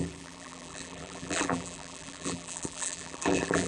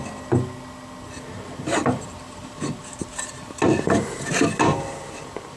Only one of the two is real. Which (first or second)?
second